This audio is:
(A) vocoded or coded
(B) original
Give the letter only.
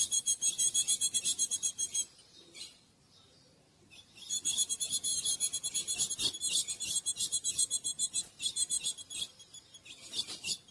A